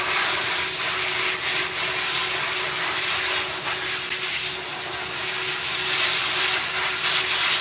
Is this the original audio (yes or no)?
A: yes